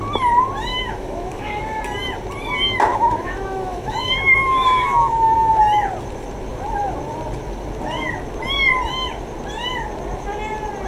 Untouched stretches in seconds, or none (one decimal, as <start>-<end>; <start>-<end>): 0.0-0.7; 1.8-2.9; 5.6-10.9